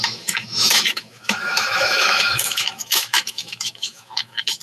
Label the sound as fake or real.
fake